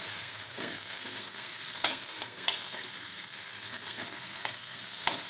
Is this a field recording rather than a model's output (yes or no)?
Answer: no